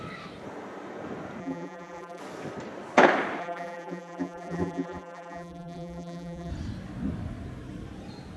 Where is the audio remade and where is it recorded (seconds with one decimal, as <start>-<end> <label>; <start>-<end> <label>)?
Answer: 0.0-1.4 recorded; 1.4-2.2 remade; 2.2-3.4 recorded; 3.4-6.5 remade; 6.5-8.4 recorded